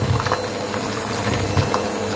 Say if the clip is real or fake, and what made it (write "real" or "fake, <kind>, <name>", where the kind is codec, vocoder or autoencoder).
real